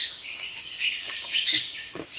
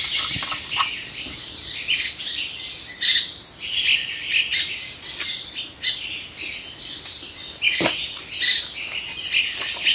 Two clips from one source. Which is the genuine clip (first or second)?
second